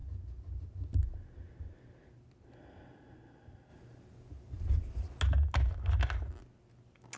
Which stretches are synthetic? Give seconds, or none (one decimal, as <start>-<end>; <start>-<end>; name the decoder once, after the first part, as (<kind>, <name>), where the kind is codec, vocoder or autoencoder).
3.7-5.2 (vocoder, BigVGAN v2)